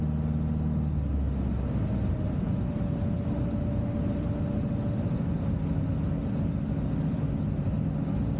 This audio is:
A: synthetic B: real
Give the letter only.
B